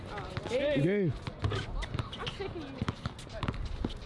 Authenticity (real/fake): real